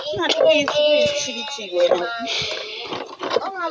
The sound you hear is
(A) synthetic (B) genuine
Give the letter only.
A